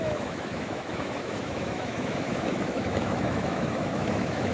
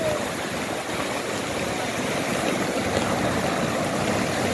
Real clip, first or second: second